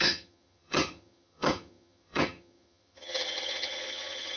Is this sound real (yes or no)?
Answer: no